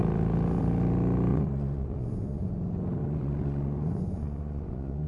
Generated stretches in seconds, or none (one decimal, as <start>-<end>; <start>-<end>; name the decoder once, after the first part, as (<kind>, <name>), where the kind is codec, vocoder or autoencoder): 1.3-2.5 (vocoder, Vocos); 3.0-5.1